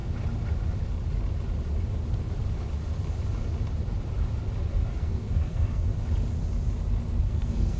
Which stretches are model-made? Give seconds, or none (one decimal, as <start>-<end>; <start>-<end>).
4.7-5.9; 7.2-7.8